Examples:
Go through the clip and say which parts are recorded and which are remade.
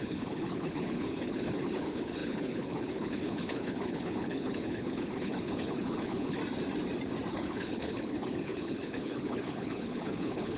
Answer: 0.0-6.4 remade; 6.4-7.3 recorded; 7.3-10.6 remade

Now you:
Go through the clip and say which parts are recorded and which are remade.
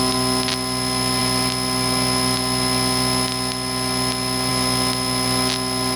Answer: 0.0-6.0 recorded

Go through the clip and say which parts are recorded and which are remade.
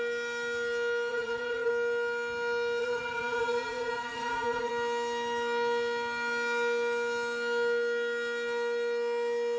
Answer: 0.0-1.1 recorded; 1.1-1.7 remade; 1.7-2.8 recorded; 2.8-4.7 remade; 4.7-9.6 recorded